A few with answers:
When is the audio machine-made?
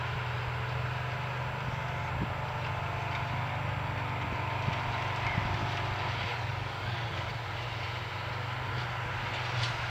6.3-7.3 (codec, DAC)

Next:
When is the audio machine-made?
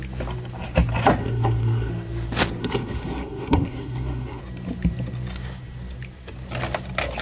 1.2-1.9 (codec, SNAC); 2.6-4.4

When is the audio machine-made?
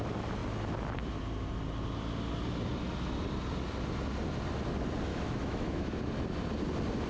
5.1-6.0 (autoencoder, DAC-VAE)